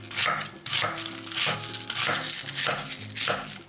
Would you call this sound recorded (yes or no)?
yes